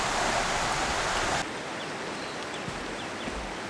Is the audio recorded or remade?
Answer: recorded